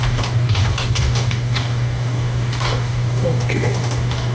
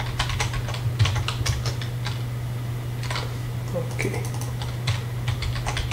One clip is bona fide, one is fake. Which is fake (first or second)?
first